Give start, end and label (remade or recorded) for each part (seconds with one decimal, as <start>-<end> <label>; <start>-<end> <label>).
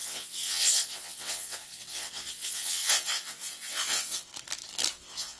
0.0-4.3 remade; 4.3-4.9 recorded; 4.9-5.4 remade